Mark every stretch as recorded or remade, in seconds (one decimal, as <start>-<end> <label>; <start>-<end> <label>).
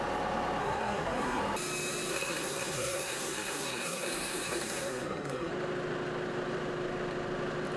0.0-0.6 recorded; 0.6-1.4 remade; 1.4-2.1 recorded; 2.1-5.5 remade; 5.5-7.8 recorded